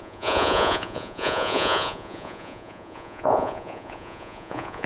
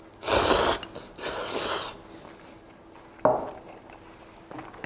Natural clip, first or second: second